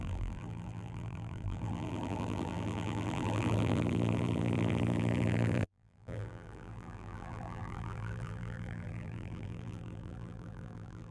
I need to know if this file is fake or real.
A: fake